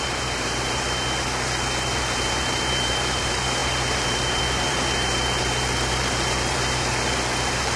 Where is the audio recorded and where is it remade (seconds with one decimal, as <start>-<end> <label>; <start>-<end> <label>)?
0.0-7.8 remade